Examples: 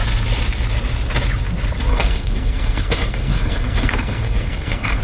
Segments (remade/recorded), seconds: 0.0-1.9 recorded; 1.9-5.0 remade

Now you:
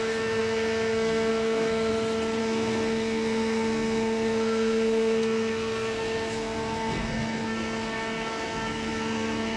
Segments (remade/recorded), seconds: 0.0-1.9 remade; 1.9-2.4 recorded; 2.4-9.6 remade

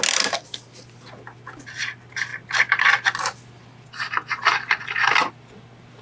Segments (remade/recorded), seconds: 0.0-6.0 recorded

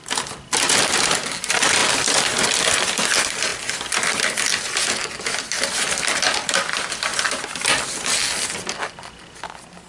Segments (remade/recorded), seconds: 0.0-9.9 recorded

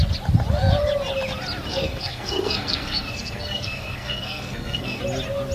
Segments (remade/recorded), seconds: 0.0-1.7 recorded; 1.7-5.0 remade; 5.0-5.5 recorded

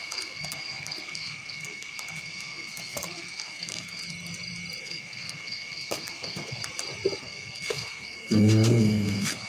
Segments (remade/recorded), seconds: 0.0-4.0 remade; 4.0-4.8 recorded; 4.8-6.6 remade; 6.6-7.2 recorded; 7.2-9.5 remade

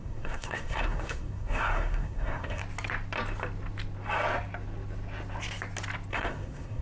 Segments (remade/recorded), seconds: 0.0-2.6 remade; 2.6-6.1 recorded; 6.1-6.8 remade